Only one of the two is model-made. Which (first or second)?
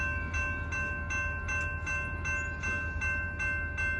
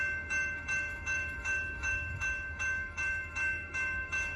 second